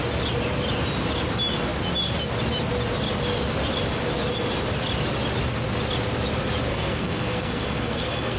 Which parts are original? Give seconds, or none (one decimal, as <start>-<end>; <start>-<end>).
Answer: 0.0-6.7